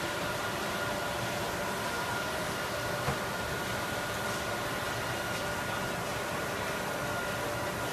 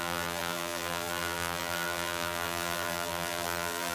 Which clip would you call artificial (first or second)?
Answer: second